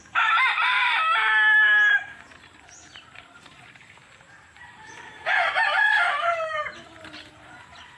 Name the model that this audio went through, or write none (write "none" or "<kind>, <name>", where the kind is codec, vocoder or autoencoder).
vocoder, BigVGAN v2